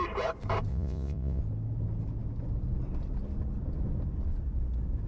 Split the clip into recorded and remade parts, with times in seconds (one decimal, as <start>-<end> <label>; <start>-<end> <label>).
0.0-0.7 recorded; 0.7-1.4 remade; 1.4-5.1 recorded